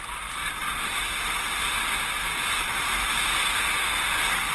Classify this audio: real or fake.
real